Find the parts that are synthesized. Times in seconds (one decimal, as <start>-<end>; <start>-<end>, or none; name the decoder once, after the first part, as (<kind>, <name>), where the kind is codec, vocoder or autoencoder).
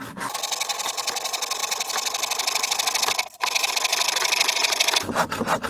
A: none